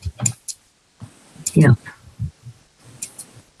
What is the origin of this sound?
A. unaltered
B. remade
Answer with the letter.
A